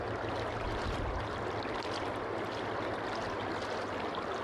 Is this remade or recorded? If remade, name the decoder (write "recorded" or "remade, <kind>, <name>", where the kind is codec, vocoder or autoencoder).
recorded